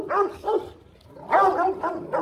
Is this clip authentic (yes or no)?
yes